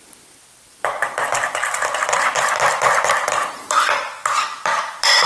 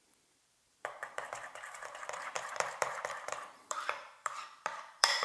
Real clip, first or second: first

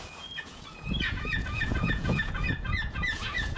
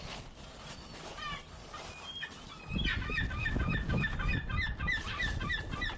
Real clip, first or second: second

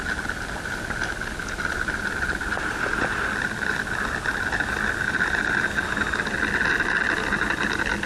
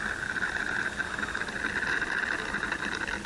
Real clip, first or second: first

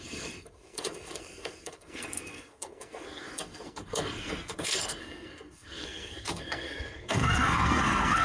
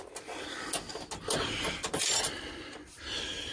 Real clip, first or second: second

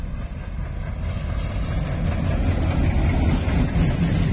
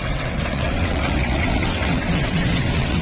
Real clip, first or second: first